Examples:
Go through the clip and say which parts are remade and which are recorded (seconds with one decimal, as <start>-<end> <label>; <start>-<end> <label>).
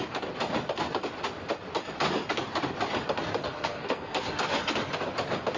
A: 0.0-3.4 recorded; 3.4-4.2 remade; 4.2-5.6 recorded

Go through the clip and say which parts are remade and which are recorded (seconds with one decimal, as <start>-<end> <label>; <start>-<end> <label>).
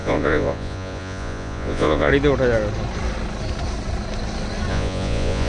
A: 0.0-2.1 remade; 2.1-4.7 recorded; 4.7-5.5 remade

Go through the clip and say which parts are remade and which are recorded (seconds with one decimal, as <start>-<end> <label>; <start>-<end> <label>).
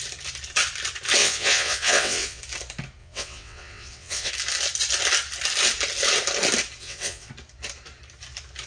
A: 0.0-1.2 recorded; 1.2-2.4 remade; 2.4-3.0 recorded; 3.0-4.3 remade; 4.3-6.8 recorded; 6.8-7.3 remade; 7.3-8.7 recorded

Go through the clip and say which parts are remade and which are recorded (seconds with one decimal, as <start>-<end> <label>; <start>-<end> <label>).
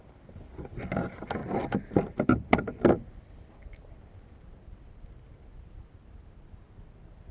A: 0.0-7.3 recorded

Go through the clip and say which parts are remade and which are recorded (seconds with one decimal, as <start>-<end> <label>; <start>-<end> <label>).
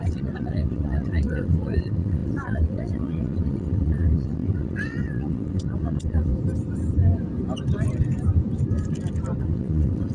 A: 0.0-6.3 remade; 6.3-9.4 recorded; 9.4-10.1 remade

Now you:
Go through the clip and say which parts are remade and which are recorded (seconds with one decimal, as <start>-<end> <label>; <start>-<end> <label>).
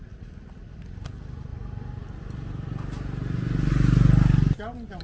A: 0.0-5.0 recorded